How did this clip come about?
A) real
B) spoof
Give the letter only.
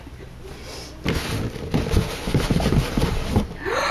A